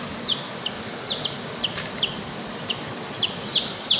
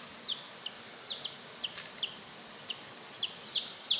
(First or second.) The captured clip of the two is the second